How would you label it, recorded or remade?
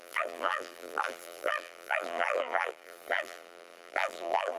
remade